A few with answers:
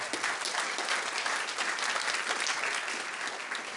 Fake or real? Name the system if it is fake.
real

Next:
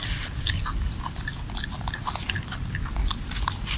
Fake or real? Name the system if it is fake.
real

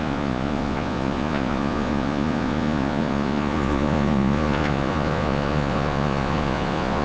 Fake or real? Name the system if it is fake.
fake, vocoder, Vocos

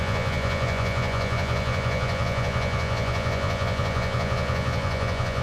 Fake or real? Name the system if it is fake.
fake, vocoder, Vocos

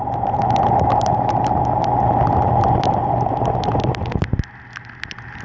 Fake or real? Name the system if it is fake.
real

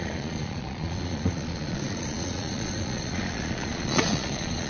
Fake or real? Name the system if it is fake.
fake, vocoder, Vocos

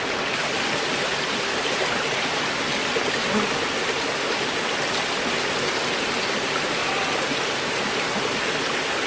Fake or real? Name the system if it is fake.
real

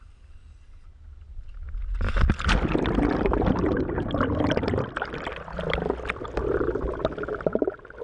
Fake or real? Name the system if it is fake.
real